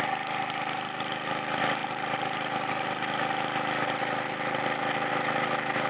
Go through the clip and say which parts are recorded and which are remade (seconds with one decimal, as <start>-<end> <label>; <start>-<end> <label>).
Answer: 0.0-5.9 recorded